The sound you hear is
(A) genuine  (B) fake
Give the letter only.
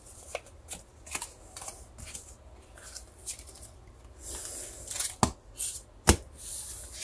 A